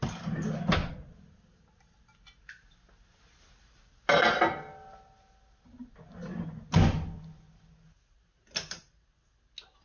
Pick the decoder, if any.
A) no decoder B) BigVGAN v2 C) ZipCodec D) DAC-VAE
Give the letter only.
A